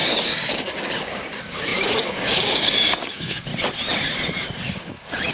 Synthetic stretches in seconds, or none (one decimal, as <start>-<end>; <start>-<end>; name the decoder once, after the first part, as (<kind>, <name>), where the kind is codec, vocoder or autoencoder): 0.0-3.5 (codec, DAC); 4.4-5.3

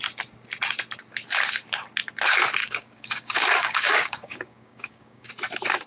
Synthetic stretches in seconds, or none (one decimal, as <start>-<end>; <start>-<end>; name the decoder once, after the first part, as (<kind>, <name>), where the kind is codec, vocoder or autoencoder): 2.6-5.3 (codec, DAC)

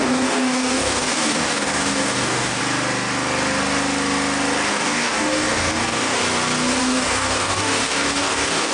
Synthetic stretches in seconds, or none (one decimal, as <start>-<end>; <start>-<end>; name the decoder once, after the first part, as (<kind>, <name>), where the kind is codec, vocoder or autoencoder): 0.0-2.6 (codec, DAC); 4.7-6.2; 6.8-8.7

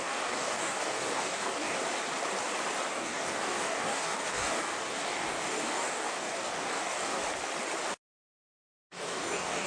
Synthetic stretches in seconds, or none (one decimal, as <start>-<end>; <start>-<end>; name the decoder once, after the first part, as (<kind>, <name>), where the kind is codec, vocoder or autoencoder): 0.0-1.8 (codec, DAC); 2.9-7.2; 8.3-9.7

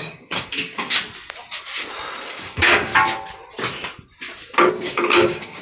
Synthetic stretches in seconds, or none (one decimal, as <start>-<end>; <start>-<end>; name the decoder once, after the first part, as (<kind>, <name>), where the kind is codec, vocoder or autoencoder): 0.0-1.0 (codec, DAC); 2.3-2.9; 4.7-5.6

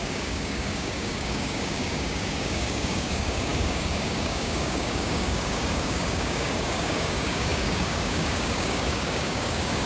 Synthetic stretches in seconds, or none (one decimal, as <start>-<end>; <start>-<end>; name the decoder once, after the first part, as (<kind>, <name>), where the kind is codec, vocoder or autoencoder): 0.0-9.9 (codec, DAC)

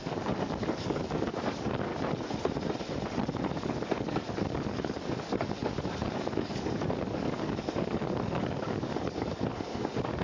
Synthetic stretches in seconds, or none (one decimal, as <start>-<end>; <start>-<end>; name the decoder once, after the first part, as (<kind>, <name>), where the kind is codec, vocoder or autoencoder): 0.0-1.9 (codec, DAC); 3.4-10.2

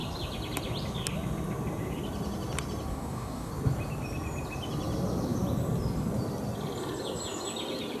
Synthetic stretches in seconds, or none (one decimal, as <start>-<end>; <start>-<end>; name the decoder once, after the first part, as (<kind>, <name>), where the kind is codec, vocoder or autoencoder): 2.9-3.5 (codec, DAC)